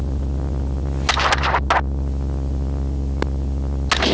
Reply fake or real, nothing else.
real